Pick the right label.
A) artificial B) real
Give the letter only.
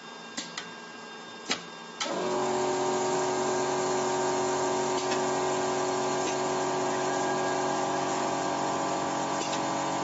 B